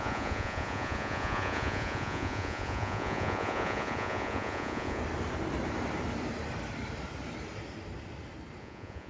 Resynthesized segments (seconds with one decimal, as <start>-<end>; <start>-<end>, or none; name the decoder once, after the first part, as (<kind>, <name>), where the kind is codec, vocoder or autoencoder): 0.0-5.0 (vocoder, Vocos); 8.6-9.1